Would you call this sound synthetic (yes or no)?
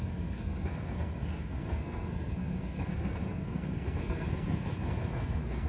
yes